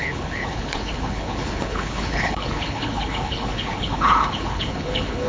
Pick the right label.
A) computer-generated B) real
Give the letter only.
A